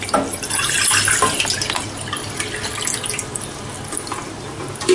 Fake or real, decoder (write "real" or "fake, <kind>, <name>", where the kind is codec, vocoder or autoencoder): real